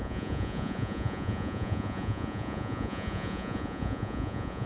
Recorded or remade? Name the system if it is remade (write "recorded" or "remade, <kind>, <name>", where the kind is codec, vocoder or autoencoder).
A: remade, vocoder, Vocos